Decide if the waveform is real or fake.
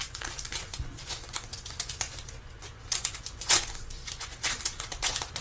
fake